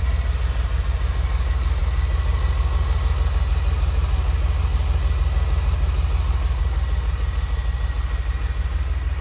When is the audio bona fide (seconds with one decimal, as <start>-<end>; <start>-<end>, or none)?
0.0-9.2